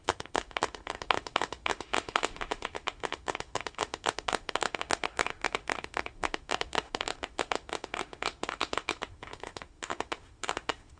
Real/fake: fake